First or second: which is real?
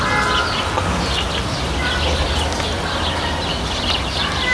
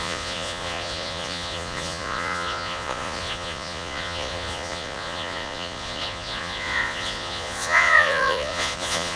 first